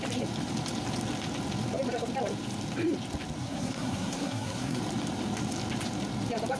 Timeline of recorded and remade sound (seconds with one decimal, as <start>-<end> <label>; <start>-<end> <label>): 0.0-3.4 recorded; 3.4-4.8 remade; 4.8-6.6 recorded